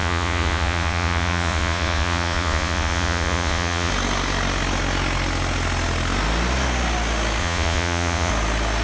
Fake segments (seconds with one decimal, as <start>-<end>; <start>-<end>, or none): 0.0-3.9; 7.4-8.3